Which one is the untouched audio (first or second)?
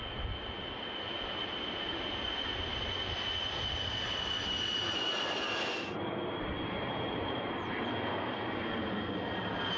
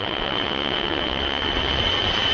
first